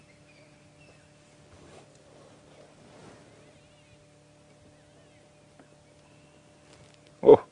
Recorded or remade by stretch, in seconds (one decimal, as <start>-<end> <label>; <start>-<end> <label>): 0.0-7.5 recorded